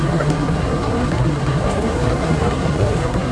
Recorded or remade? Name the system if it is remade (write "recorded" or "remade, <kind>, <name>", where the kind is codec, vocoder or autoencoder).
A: remade, codec, SNAC